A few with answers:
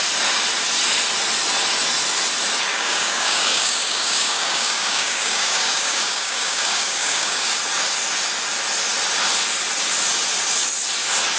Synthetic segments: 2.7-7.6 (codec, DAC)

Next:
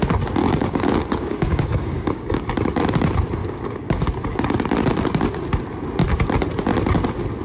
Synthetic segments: 0.4-2.5 (codec, DAC); 3.4-4.1